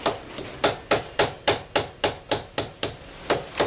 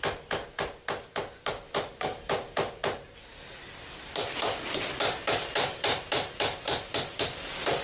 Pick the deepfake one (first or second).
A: second